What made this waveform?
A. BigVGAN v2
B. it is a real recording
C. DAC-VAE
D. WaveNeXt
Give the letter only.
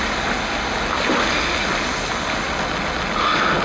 B